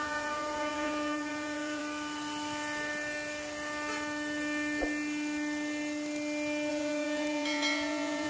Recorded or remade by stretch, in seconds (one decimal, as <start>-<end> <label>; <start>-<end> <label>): 0.0-1.8 remade; 1.8-6.7 recorded; 6.7-8.3 remade

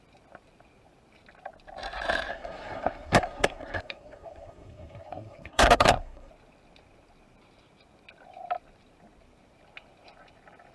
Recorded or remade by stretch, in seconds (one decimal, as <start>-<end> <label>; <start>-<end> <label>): 0.0-2.3 recorded; 2.3-6.3 remade; 6.3-10.7 recorded

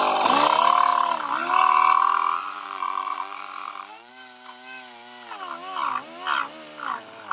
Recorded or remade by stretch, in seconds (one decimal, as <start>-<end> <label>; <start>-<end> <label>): 0.0-2.4 recorded; 2.4-4.1 remade; 4.1-7.3 recorded

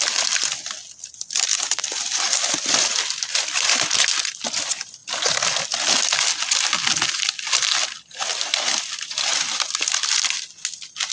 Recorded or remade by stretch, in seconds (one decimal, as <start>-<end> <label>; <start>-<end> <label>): 0.0-11.1 recorded